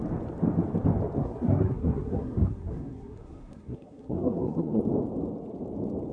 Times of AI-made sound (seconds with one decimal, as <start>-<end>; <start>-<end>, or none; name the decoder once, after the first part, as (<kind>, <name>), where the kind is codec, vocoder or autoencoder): 1.2-4.8 (codec, SNAC)